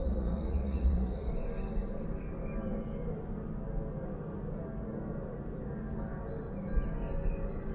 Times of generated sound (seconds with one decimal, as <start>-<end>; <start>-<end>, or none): 0.0-1.3